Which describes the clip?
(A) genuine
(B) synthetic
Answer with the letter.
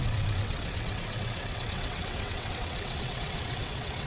B